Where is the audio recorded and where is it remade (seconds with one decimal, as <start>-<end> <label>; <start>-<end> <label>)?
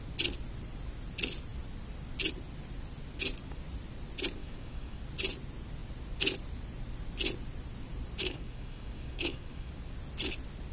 0.0-4.4 recorded; 4.4-5.0 remade; 5.0-8.2 recorded; 8.2-9.7 remade; 9.7-10.7 recorded